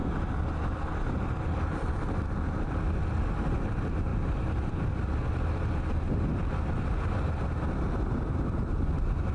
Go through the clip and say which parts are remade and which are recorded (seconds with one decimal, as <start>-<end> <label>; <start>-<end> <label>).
0.0-1.9 remade; 1.9-9.3 recorded